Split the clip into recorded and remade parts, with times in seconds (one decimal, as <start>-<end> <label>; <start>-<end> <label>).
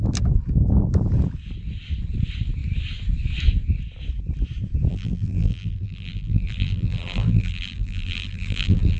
0.0-4.9 recorded; 4.9-9.0 remade